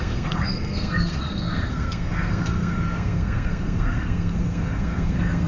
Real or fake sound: fake